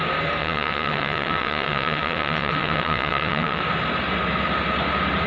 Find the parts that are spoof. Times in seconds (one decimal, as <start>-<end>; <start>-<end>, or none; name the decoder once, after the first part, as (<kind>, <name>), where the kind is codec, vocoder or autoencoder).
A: 0.4-3.6 (vocoder, WaveNeXt)